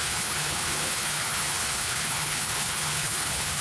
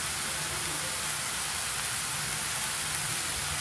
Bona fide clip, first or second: second